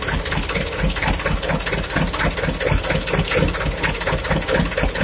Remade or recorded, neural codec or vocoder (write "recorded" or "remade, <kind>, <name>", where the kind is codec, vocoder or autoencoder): recorded